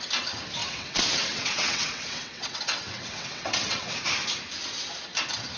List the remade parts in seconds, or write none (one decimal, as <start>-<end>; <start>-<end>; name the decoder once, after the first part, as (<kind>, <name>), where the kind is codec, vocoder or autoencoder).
0.6-4.0 (vocoder, WaveNeXt)